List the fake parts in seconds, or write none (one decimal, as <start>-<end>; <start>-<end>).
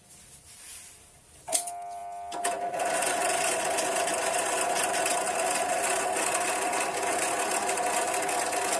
none